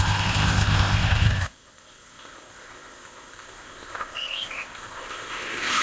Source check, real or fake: fake